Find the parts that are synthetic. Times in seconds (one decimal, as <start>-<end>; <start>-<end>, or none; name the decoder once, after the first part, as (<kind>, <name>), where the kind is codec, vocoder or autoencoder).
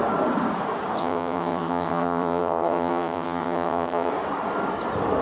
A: 1.0-4.1 (vocoder, HiFi-GAN)